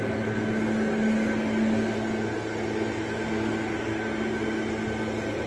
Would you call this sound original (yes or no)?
yes